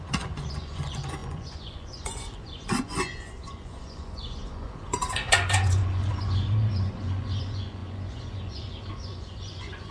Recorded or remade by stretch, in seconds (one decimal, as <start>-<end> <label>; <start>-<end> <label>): 0.0-9.9 remade